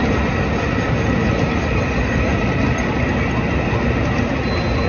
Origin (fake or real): real